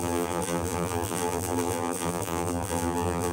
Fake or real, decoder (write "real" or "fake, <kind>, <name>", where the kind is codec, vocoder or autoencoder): fake, vocoder, BigVGAN v2